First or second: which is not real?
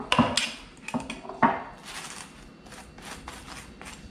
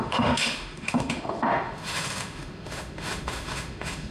second